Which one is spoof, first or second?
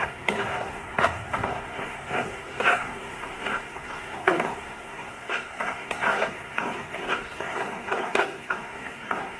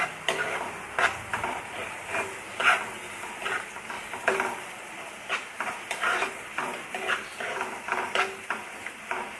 first